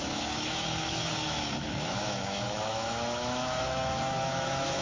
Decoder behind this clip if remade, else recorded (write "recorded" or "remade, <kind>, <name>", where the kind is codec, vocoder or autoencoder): remade, autoencoder, DAC-VAE